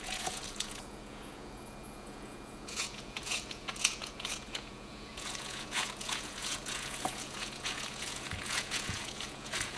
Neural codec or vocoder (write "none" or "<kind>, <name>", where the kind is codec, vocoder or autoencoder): vocoder, Vocos